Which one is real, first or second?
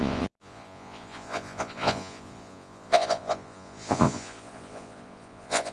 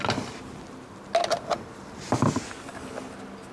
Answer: second